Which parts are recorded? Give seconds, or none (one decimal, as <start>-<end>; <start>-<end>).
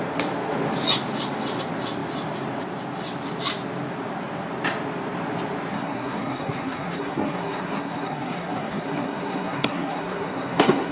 0.0-5.7